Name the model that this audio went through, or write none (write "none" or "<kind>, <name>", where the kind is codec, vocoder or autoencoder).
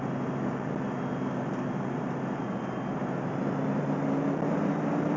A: none